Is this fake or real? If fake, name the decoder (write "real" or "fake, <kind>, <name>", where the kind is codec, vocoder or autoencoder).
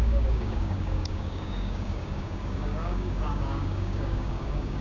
fake, codec, DAC